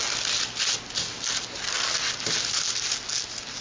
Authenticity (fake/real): real